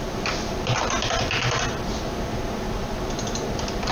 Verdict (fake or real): real